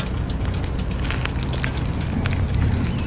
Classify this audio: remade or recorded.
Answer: recorded